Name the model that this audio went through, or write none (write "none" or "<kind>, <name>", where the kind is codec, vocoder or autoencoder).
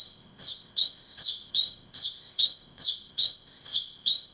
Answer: codec, ZipCodec